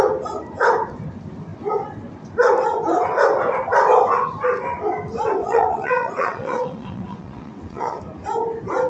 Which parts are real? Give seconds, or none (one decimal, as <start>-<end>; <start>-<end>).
0.0-5.4; 8.0-8.9

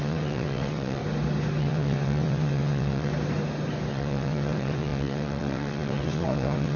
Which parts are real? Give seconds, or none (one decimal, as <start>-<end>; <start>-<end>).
1.0-1.6; 3.1-3.9